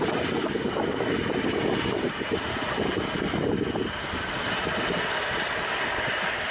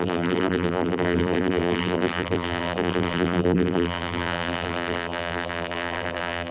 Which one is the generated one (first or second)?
second